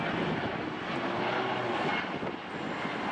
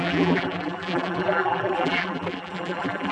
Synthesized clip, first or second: second